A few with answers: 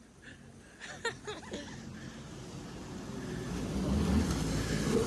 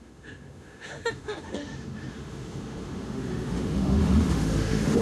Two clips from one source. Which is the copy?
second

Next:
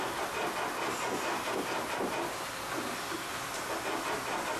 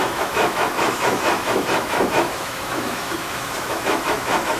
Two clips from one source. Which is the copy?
second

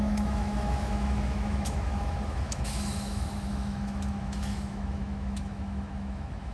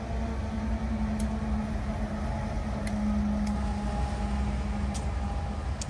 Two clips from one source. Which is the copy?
first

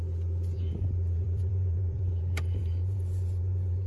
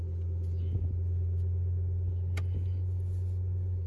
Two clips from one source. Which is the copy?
first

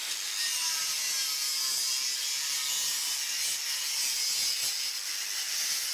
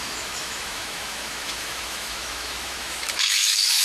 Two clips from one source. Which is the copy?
second